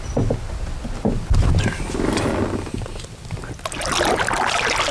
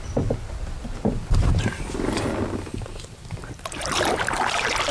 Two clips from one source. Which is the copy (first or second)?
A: second